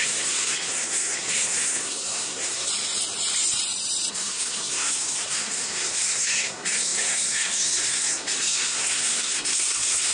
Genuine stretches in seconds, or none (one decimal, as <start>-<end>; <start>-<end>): 2.7-4.1